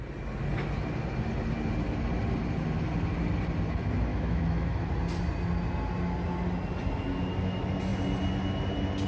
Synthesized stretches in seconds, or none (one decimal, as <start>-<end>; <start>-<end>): 4.1-4.9